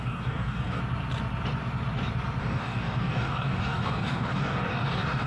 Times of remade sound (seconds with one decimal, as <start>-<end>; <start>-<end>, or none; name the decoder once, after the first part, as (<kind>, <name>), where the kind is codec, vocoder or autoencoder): 0.0-0.8 (codec, DAC); 2.4-5.3